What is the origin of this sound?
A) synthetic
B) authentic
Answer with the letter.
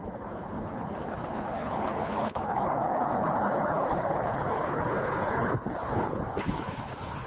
A